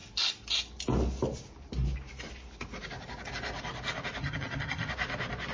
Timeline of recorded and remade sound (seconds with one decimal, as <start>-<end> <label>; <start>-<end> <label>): 0.0-4.2 recorded; 4.2-4.9 remade; 4.9-5.5 recorded